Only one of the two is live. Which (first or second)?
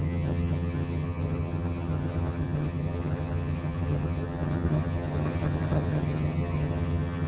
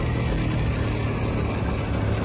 second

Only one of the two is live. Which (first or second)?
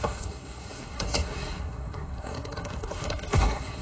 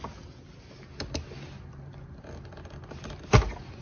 second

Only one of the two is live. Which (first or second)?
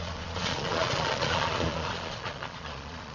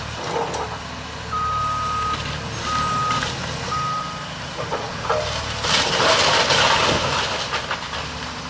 second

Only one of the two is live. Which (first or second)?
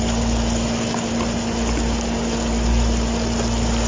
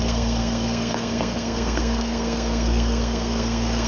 first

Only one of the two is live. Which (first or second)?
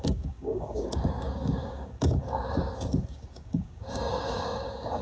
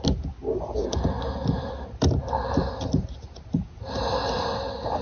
second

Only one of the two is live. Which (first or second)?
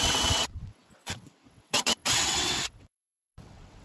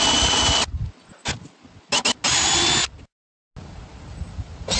second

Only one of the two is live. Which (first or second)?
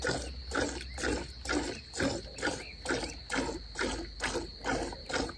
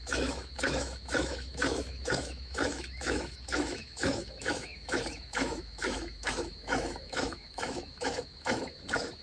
first